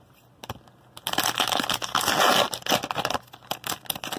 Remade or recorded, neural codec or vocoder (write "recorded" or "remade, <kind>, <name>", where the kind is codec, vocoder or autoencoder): recorded